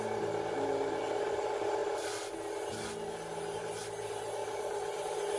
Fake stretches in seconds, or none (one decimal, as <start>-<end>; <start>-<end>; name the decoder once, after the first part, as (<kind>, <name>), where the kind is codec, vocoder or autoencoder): none